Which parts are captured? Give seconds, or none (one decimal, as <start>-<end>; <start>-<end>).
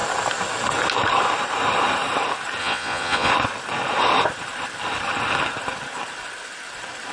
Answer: 0.0-2.6; 3.3-7.1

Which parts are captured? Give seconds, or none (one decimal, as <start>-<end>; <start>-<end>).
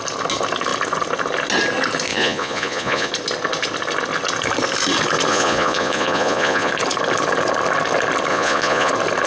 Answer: 0.0-2.1; 3.1-5.3; 6.7-8.3; 8.9-9.3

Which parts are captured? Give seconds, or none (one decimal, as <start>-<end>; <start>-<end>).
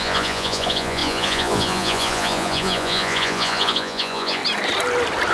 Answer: 4.4-5.3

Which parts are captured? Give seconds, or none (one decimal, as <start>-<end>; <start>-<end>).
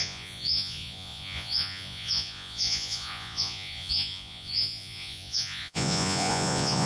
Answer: none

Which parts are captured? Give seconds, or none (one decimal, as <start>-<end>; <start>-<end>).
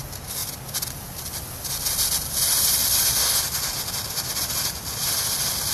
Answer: 0.0-5.7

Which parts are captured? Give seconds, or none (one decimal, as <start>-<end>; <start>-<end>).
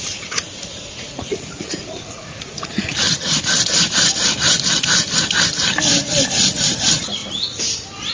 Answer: 3.3-6.8; 7.2-8.1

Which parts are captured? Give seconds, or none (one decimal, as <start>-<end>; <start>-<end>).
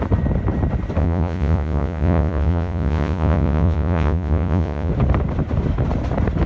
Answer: 0.0-1.0; 4.9-6.5